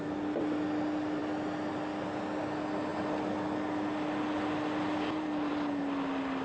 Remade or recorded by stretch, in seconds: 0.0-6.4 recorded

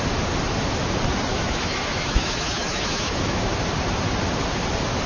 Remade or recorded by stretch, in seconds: 0.0-1.3 recorded; 1.3-3.5 remade; 3.5-5.1 recorded

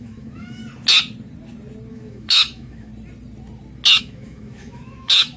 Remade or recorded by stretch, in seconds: 0.0-0.6 remade; 0.6-1.9 recorded; 1.9-2.9 remade; 2.9-4.0 recorded; 4.0-5.4 remade

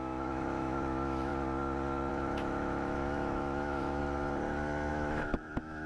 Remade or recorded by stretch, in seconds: 0.0-1.3 remade; 1.3-2.1 recorded; 2.1-4.0 remade; 4.0-4.9 recorded; 4.9-5.9 remade

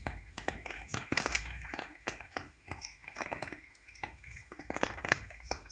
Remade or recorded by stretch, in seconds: 0.0-5.7 remade

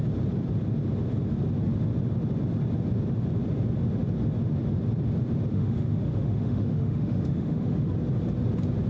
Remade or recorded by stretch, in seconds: 0.0-5.5 recorded; 5.5-7.9 remade; 7.9-8.9 recorded

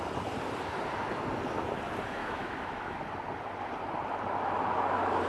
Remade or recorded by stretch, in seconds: 0.0-2.2 recorded; 2.2-3.0 remade; 3.0-5.3 recorded

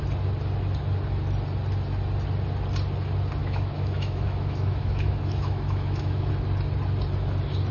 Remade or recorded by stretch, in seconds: 0.0-3.4 recorded; 3.4-6.3 remade; 6.3-7.7 recorded